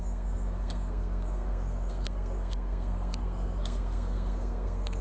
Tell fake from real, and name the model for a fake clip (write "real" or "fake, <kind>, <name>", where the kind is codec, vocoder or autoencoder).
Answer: fake, codec, SNAC